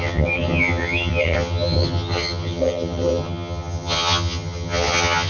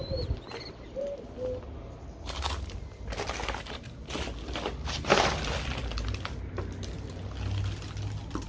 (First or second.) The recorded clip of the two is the second